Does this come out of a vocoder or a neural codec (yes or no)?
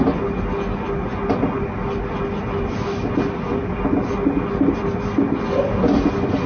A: no